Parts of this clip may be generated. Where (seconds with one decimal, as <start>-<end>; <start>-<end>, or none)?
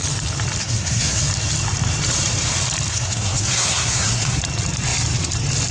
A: 0.6-1.2; 2.9-4.4